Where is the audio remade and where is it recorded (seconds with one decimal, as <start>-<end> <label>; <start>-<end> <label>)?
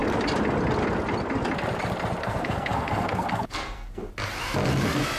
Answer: 0.0-2.2 recorded; 2.2-4.1 remade; 4.1-5.2 recorded